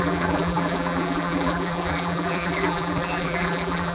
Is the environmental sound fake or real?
fake